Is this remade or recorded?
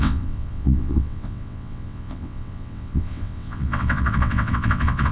remade